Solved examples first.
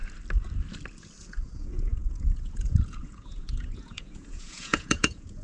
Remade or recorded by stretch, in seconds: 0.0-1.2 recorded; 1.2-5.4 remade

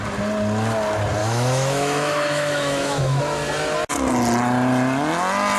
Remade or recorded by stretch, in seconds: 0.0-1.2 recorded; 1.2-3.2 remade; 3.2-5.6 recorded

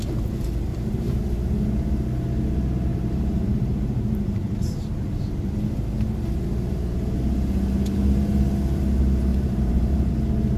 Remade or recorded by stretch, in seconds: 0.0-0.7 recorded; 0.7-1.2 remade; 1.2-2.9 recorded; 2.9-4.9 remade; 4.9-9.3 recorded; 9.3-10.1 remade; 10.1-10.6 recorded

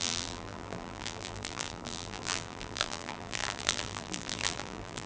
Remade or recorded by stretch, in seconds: 0.0-5.1 remade

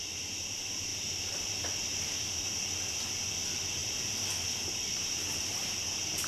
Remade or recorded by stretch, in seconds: 0.0-3.8 recorded; 3.8-5.4 remade; 5.4-6.3 recorded

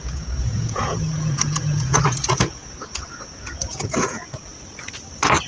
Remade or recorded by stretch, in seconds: 0.0-4.5 remade; 4.5-5.5 recorded

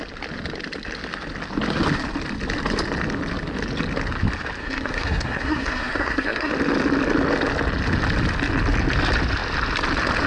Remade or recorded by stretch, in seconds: 0.0-4.6 recorded; 4.6-6.5 remade; 6.5-10.3 recorded